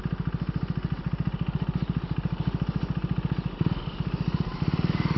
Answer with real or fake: real